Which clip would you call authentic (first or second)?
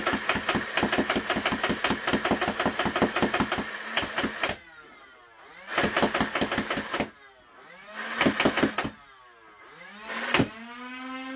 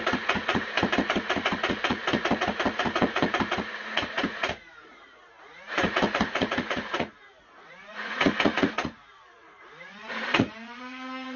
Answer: first